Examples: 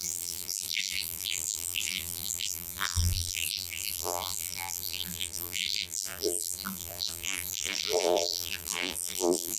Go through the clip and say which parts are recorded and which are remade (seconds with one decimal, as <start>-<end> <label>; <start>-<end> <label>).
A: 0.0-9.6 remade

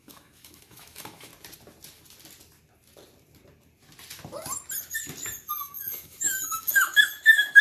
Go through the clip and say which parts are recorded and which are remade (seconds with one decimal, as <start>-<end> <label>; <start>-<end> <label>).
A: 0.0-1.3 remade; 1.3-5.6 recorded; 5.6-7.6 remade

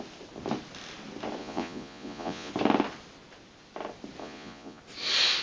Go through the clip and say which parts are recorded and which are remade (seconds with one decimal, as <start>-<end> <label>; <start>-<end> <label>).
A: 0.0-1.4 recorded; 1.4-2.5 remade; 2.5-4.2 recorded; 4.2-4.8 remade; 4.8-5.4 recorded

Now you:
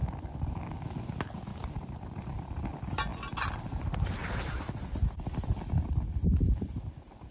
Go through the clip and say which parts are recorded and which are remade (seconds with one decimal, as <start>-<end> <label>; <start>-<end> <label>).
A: 0.0-0.5 remade; 0.5-1.5 recorded; 1.5-2.2 remade; 2.2-7.3 recorded

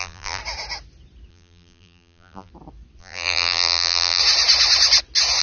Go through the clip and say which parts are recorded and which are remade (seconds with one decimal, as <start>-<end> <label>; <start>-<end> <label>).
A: 0.0-0.4 remade; 0.4-1.3 recorded; 1.3-2.5 remade; 2.5-3.0 recorded; 3.0-4.2 remade; 4.2-5.4 recorded

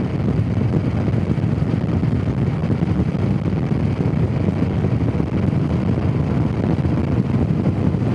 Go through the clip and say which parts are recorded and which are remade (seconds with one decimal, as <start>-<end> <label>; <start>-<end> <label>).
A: 0.0-8.1 recorded

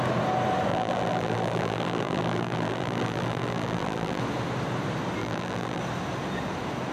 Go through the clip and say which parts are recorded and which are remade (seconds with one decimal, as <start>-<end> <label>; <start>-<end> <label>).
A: 0.0-0.7 recorded; 0.7-4.2 remade; 4.2-5.2 recorded; 5.2-5.8 remade; 5.8-6.9 recorded